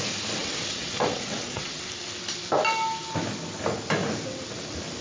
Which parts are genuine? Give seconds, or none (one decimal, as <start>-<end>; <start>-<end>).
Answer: 0.0-0.4; 1.9-5.0